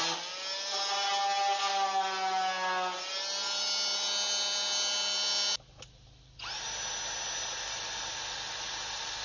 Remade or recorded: recorded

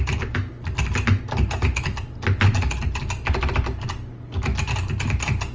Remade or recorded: recorded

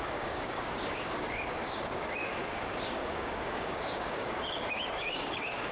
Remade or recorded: remade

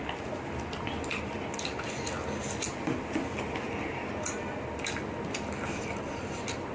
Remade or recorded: recorded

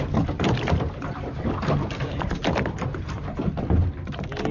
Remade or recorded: recorded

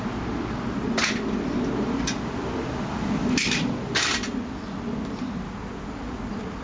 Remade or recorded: recorded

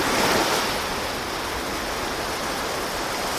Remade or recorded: recorded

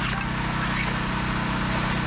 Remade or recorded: recorded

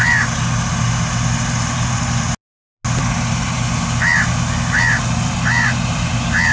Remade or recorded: recorded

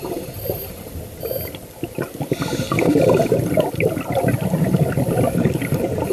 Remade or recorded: recorded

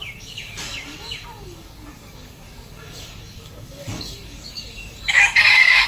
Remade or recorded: remade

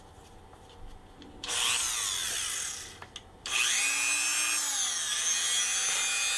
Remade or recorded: recorded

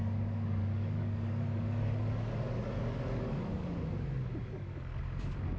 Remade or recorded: remade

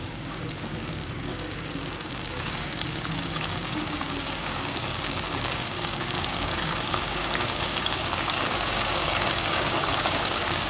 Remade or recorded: remade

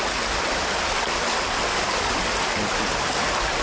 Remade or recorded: recorded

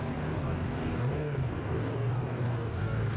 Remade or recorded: remade